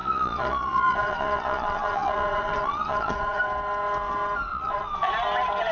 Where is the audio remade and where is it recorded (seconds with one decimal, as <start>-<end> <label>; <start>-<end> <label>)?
0.0-3.4 remade; 3.4-4.5 recorded; 4.5-5.1 remade; 5.1-5.7 recorded